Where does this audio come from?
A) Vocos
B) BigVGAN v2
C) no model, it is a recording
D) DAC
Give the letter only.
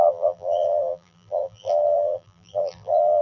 B